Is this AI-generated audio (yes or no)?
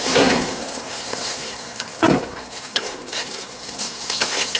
yes